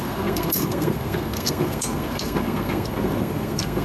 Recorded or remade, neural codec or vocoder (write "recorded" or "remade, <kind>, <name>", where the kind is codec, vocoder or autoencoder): remade, codec, SNAC